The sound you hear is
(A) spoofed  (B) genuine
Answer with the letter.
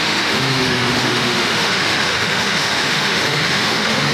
A